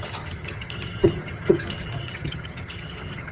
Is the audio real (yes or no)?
no